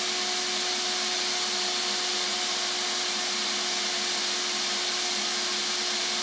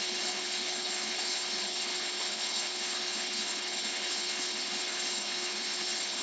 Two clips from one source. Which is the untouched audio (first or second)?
first